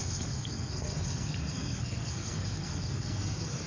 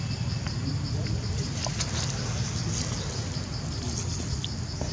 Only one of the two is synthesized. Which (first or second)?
first